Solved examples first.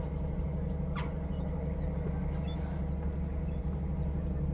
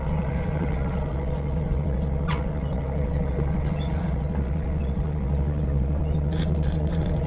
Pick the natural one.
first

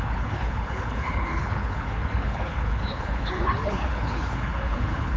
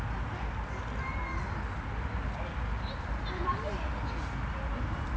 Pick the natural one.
second